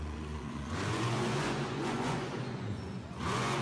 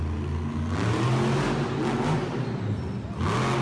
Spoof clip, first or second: first